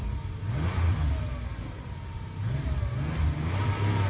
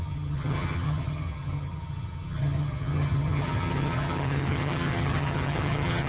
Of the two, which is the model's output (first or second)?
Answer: second